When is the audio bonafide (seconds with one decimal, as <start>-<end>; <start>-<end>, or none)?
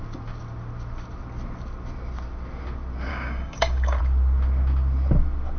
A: 0.0-3.1; 4.0-5.6